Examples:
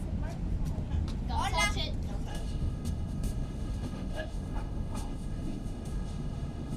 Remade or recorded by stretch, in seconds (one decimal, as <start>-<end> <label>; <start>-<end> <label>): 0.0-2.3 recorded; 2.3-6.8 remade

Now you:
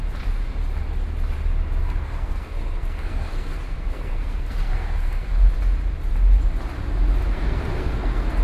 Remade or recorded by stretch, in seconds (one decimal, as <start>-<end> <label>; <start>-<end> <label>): 0.0-1.8 recorded; 1.8-5.5 remade; 5.5-7.3 recorded; 7.3-8.4 remade

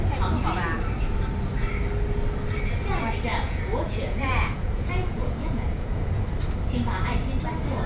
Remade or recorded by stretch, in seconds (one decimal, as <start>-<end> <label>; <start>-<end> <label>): 0.0-3.3 recorded; 3.3-6.2 remade; 6.2-7.9 recorded

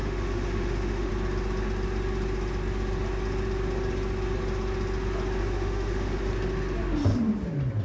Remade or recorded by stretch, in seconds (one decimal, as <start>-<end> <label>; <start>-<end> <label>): 0.0-1.1 remade; 1.1-5.4 recorded; 5.4-6.3 remade; 6.3-7.8 recorded

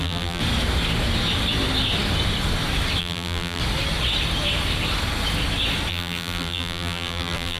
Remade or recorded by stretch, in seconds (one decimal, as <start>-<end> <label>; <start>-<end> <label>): 0.0-0.4 remade; 0.4-3.0 recorded; 3.0-3.6 remade; 3.6-5.9 recorded; 5.9-7.6 remade

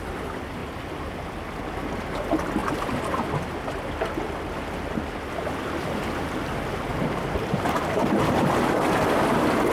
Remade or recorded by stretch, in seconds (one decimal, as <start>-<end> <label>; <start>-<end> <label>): 0.0-6.9 recorded; 6.9-8.7 remade; 8.7-9.7 recorded